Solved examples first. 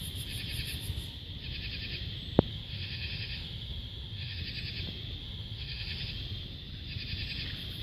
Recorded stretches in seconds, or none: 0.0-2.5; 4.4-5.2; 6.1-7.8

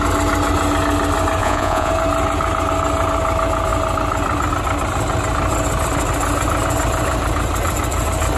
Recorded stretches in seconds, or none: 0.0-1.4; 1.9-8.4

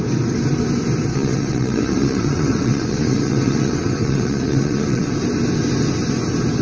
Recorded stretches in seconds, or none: 0.0-1.1; 5.1-6.6

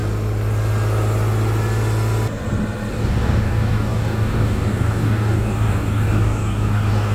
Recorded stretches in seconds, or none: 0.0-2.9

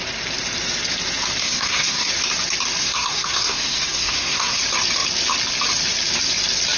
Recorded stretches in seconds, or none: 0.0-1.4; 2.1-2.8; 4.6-6.8